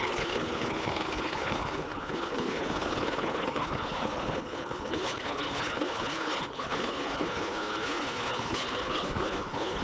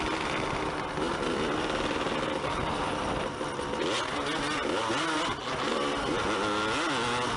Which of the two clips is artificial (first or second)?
first